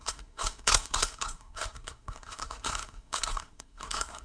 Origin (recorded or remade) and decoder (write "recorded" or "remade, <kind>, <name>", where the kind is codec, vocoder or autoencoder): remade, codec, SNAC